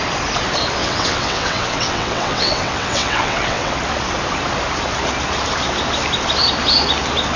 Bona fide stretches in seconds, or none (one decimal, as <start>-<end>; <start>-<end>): 0.0-0.8; 3.7-7.4